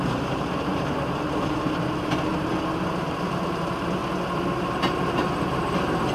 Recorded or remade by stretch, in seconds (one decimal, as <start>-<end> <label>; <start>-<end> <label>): 0.0-2.3 remade; 2.3-2.9 recorded; 2.9-4.0 remade; 4.0-5.6 recorded; 5.6-6.1 remade